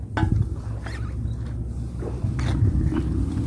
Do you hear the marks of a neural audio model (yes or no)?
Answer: no